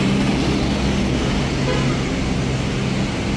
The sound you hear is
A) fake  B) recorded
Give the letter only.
B